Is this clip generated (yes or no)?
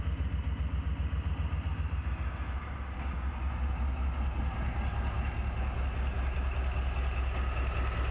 no